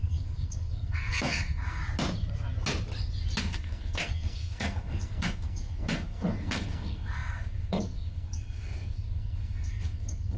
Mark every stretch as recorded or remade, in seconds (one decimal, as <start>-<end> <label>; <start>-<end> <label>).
0.0-1.8 remade; 1.8-3.4 recorded; 3.4-10.4 remade